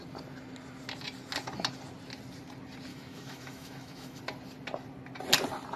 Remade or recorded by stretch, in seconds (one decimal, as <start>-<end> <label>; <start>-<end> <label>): 0.0-2.9 recorded; 2.9-4.2 remade; 4.2-5.8 recorded